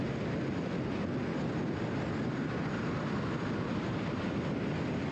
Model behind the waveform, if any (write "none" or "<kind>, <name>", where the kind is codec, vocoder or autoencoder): none